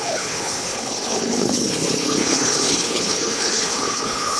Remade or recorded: remade